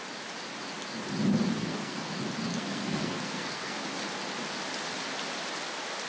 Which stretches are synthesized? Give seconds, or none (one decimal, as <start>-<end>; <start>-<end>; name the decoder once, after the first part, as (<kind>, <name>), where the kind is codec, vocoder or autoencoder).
1.6-2.1 (codec, SNAC); 2.5-3.8